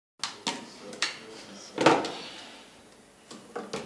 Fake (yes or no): no